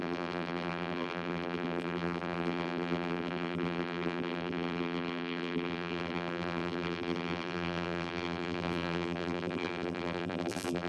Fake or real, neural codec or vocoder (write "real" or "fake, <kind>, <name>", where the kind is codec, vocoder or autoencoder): fake, vocoder, BigVGAN v2